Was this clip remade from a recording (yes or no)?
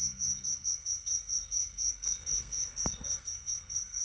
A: yes